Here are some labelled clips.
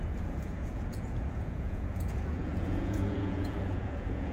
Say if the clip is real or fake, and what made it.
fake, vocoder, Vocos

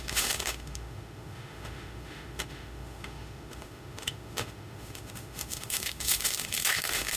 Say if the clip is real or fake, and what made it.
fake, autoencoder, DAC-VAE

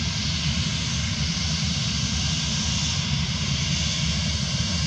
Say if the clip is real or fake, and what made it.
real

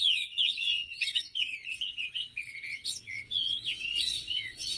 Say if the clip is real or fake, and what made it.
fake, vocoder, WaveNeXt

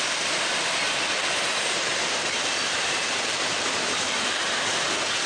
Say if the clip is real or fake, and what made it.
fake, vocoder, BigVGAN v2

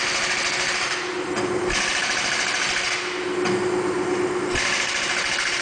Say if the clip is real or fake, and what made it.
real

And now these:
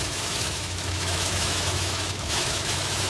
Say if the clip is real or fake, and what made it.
fake, autoencoder, DAC-VAE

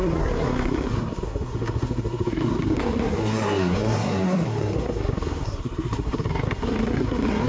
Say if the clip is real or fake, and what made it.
fake, codec, SNAC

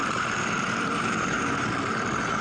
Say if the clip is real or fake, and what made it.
fake, vocoder, BigVGAN v2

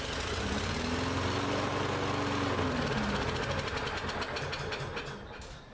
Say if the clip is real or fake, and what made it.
real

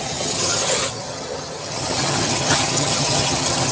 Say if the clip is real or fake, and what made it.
fake, vocoder, HiFi-GAN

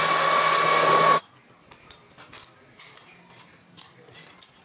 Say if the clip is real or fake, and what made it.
real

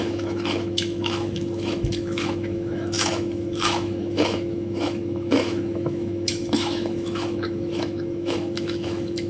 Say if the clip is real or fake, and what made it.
fake, autoencoder, DAC-VAE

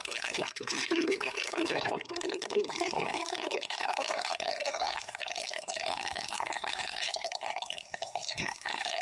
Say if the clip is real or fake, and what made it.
fake, codec, SNAC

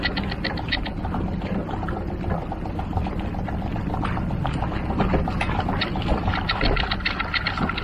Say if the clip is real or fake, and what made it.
real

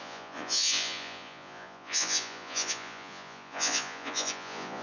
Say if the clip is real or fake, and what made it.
fake, vocoder, Vocos